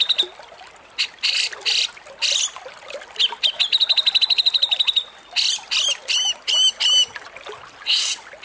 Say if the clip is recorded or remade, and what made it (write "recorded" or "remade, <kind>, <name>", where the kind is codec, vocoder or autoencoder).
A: recorded